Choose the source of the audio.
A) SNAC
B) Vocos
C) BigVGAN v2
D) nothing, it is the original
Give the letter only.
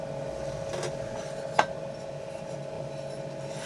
D